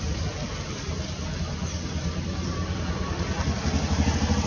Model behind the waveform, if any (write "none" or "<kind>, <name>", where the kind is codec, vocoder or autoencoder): none